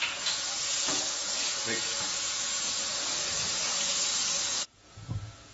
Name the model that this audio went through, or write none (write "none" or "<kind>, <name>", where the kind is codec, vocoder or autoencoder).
vocoder, Vocos